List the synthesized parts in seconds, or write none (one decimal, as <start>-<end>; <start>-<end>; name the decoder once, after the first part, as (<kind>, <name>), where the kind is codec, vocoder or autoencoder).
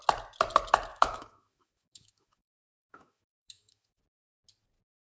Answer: 0.9-4.0 (autoencoder, DAC-VAE)